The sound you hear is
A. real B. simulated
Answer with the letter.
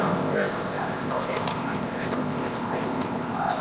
B